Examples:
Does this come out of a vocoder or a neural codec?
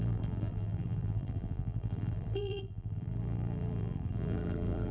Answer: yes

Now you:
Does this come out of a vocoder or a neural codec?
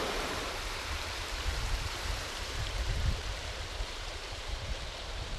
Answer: yes